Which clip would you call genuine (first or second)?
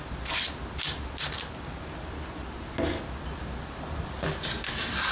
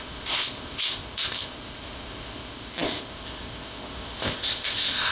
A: first